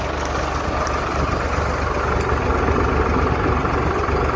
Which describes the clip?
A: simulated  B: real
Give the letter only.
B